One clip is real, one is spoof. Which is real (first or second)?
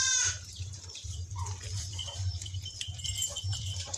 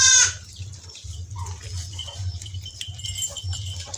second